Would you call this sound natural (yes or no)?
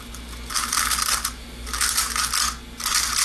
yes